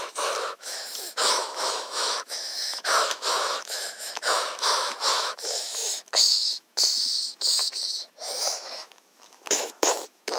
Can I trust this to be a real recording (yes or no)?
no